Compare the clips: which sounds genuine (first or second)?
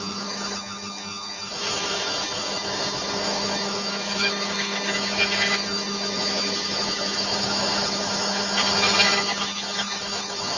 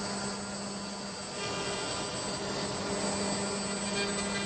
second